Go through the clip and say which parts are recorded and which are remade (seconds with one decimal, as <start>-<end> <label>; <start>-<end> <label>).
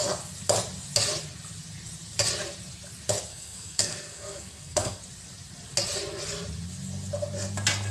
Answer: 0.0-3.3 recorded; 3.3-5.0 remade; 5.0-7.9 recorded